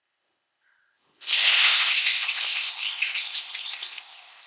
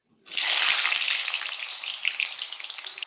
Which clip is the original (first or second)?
second